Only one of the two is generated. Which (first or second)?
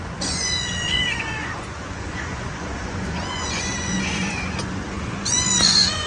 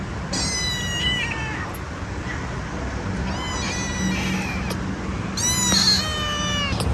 first